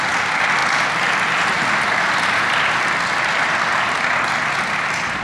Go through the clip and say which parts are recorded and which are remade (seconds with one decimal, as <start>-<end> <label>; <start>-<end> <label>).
0.0-5.2 recorded